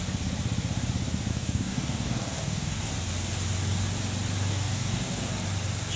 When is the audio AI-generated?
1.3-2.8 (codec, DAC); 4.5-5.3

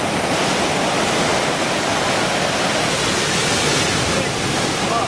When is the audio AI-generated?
none

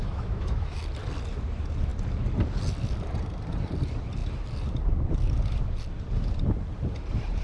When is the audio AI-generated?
0.0-0.8 (autoencoder, DAC-VAE)